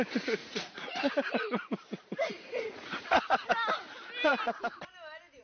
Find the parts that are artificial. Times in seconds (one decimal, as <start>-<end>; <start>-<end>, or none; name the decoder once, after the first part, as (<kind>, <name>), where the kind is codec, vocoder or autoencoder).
0.4-3.5 (vocoder, Vocos)